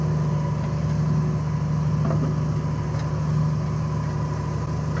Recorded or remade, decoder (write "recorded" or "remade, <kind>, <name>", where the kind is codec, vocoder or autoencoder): recorded